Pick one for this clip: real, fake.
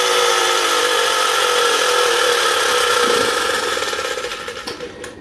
fake